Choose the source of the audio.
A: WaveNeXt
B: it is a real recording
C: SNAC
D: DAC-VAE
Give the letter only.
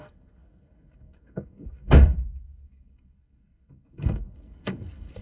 C